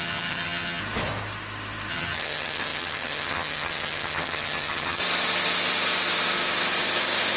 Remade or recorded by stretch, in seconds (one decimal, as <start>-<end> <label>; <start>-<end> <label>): 0.0-0.8 remade; 0.8-1.9 recorded; 1.9-5.0 remade; 5.0-7.4 recorded